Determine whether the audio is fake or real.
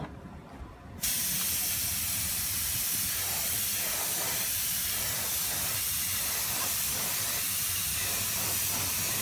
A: real